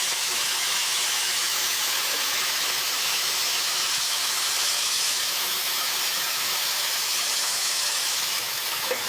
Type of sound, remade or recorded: remade